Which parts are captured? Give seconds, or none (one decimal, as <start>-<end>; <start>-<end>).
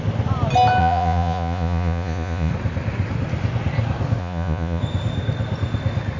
0.0-0.8; 2.5-4.2; 4.8-6.2